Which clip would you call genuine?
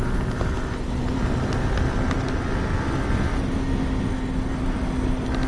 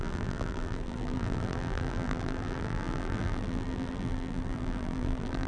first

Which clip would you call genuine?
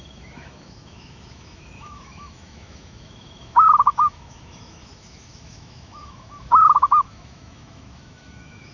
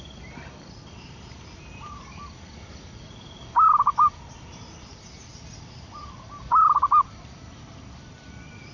second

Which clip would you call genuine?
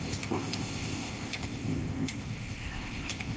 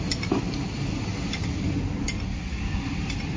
second